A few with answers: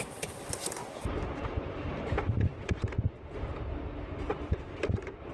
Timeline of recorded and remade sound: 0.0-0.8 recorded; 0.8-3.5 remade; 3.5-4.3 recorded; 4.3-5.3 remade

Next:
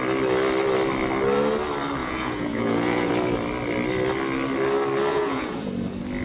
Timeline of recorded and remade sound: 0.0-2.0 recorded; 2.0-3.1 remade; 3.1-5.1 recorded; 5.1-5.7 remade; 5.7-6.2 recorded

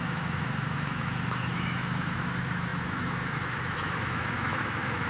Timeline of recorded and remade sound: 0.0-5.1 remade

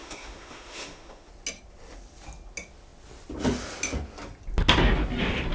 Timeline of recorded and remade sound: 0.0-1.3 remade; 1.3-5.5 recorded

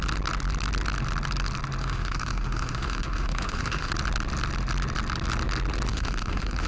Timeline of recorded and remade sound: 0.0-1.8 recorded; 1.8-3.9 remade; 3.9-5.9 recorded; 5.9-6.7 remade

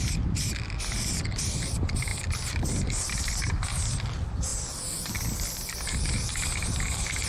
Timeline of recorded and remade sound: 0.0-2.1 recorded; 2.1-3.3 remade; 3.3-4.5 recorded; 4.5-5.1 remade; 5.1-7.3 recorded